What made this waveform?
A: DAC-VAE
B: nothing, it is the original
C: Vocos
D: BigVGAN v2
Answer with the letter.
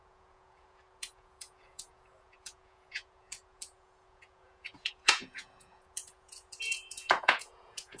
C